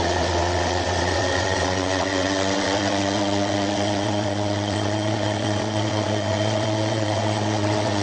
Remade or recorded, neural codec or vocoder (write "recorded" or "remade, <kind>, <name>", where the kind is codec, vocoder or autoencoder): remade, vocoder, WaveNeXt